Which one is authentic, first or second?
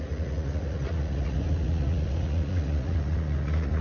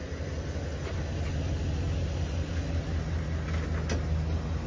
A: second